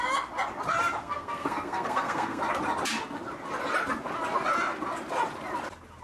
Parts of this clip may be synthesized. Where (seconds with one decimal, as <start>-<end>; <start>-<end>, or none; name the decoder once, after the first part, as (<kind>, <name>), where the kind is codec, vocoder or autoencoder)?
1.0-2.4 (codec, SNAC)